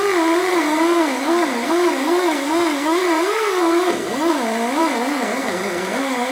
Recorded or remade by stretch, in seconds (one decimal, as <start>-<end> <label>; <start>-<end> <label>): 0.0-0.5 recorded; 0.5-4.3 remade; 4.3-4.8 recorded; 4.8-6.3 remade